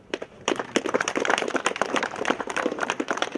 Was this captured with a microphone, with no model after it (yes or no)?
no